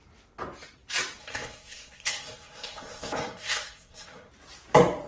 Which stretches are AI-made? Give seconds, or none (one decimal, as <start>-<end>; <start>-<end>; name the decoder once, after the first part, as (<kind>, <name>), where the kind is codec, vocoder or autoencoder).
1.2-4.3 (codec, SNAC)